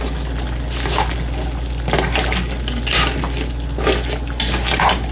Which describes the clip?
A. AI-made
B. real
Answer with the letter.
B